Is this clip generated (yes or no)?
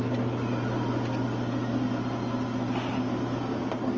no